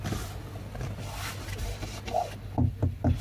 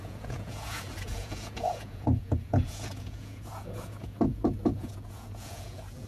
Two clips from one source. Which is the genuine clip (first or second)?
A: first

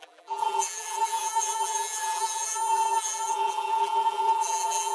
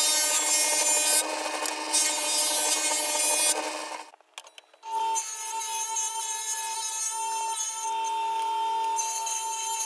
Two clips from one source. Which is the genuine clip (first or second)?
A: second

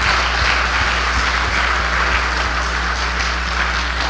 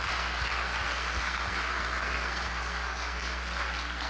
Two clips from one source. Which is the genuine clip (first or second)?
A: first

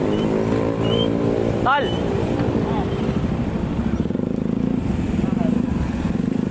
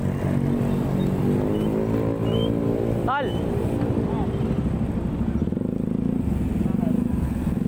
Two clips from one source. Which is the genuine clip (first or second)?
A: second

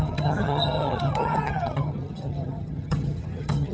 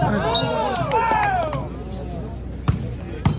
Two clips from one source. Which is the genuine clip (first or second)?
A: second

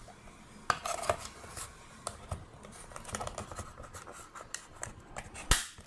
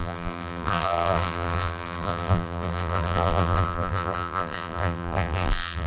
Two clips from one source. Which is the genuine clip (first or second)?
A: first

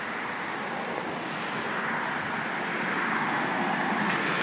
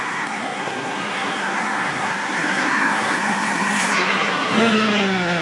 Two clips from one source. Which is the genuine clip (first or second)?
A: first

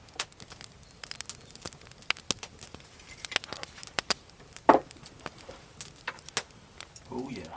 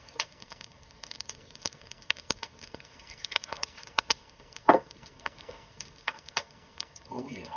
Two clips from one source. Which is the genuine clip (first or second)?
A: first